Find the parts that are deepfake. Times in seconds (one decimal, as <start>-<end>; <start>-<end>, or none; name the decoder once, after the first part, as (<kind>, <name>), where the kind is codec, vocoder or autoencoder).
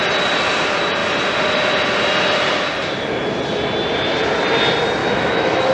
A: 5.0-5.7 (autoencoder, DAC-VAE)